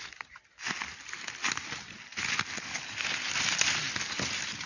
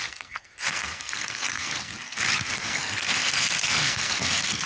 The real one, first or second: first